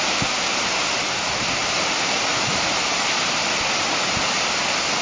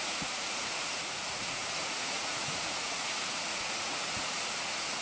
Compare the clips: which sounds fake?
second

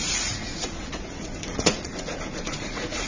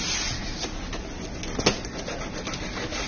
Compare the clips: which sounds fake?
first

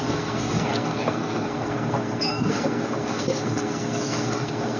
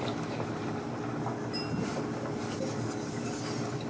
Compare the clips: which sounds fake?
first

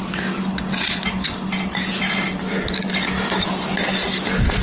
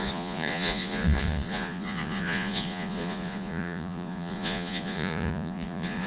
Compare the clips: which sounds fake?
second